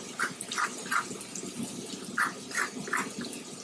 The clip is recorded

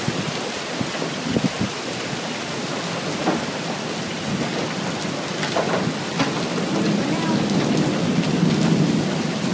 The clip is recorded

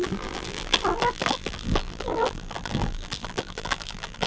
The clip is remade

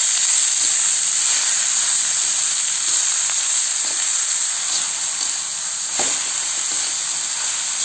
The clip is recorded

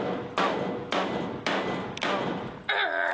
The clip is recorded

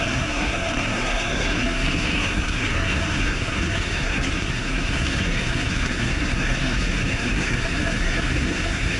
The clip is remade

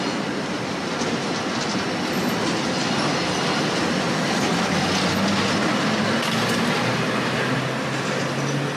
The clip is recorded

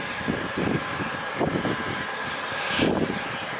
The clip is recorded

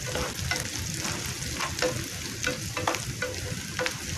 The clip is recorded